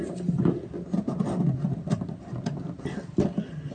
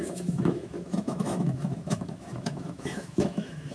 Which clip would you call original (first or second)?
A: first